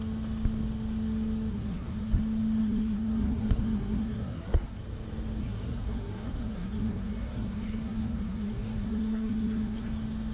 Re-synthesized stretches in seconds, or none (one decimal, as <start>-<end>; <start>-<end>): 1.5-2.2; 2.6-4.8; 5.4-9.9